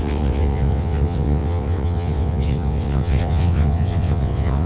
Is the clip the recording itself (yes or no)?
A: no